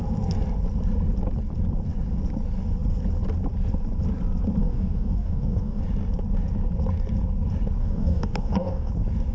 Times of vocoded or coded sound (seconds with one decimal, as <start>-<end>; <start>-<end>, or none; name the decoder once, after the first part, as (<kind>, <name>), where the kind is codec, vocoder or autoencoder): 4.6-5.8 (codec, DAC); 7.8-8.9